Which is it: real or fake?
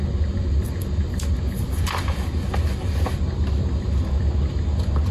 real